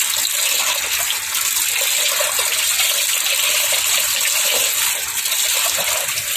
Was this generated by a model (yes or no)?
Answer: no